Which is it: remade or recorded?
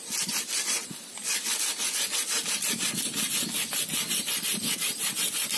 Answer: recorded